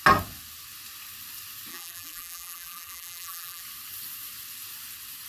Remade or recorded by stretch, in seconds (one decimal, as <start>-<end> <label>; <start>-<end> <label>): 0.0-1.7 recorded; 1.7-3.6 remade; 3.6-5.3 recorded